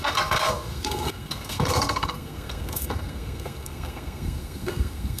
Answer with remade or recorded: remade